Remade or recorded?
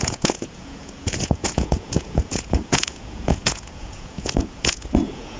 remade